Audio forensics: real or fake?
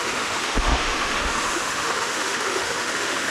fake